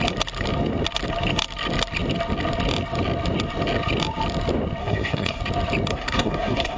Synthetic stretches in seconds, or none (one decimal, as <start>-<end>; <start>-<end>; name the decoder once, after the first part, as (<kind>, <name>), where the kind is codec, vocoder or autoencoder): 4.8-5.4 (codec, SNAC); 5.9-6.8